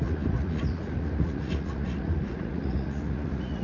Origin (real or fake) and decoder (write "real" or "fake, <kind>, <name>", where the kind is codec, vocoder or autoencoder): fake, vocoder, Vocos